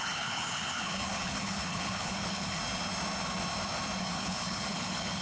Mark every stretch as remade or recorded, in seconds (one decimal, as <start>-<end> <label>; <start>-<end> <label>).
0.0-2.6 remade; 2.6-4.0 recorded; 4.0-5.2 remade